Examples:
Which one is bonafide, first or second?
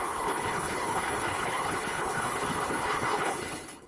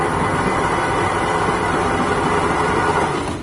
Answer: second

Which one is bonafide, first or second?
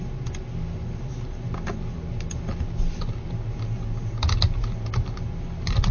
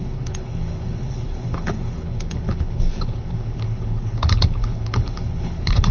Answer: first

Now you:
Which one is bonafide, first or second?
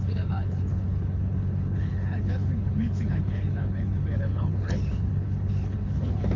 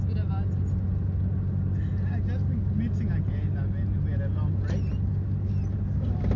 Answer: second